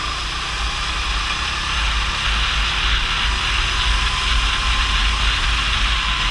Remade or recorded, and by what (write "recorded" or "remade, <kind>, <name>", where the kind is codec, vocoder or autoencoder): recorded